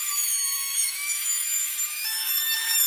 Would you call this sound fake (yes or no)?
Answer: yes